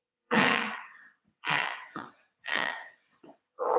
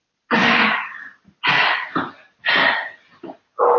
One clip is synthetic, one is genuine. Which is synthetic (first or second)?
first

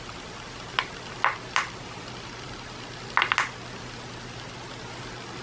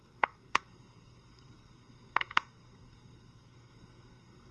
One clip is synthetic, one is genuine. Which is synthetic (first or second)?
second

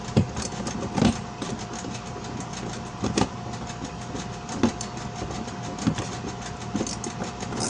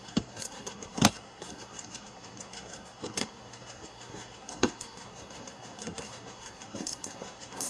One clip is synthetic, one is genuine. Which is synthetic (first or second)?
second